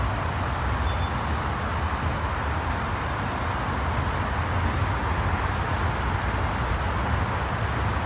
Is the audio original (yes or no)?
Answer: yes